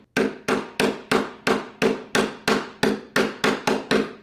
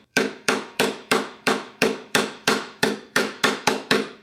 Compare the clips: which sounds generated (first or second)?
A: second